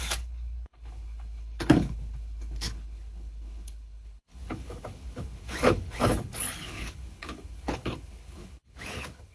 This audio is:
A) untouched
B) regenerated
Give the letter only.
B